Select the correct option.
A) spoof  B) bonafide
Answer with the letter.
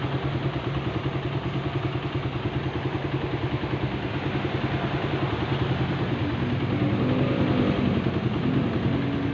B